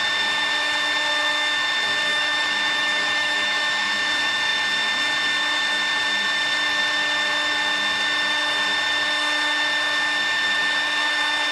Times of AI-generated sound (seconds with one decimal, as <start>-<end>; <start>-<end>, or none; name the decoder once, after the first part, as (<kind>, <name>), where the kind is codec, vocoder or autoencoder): 2.1-4.1 (autoencoder, DAC-VAE)